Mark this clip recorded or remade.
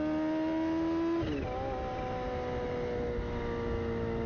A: recorded